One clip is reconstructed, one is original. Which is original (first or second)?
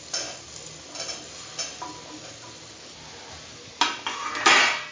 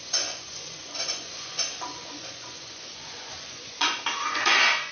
first